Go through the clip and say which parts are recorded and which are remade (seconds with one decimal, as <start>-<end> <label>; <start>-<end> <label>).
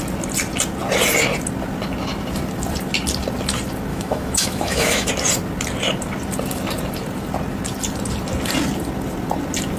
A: 0.0-3.9 recorded; 3.9-5.1 remade; 5.1-9.8 recorded